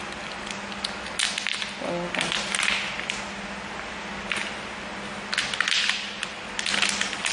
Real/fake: real